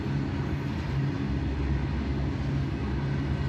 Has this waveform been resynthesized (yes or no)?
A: no